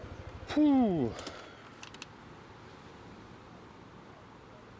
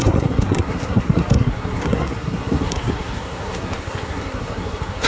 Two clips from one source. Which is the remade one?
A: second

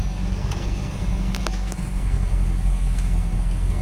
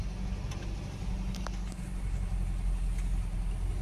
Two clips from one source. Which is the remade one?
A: first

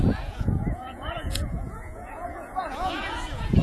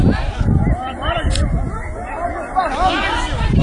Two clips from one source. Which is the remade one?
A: first